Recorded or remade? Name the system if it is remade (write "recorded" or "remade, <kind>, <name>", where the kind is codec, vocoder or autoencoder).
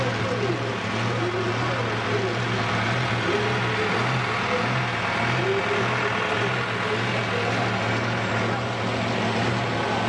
recorded